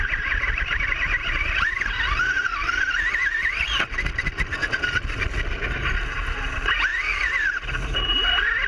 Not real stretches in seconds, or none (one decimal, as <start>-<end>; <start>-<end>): none